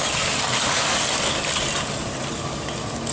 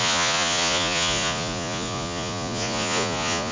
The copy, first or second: second